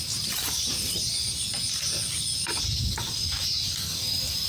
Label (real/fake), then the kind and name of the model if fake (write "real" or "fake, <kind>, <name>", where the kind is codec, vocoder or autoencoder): real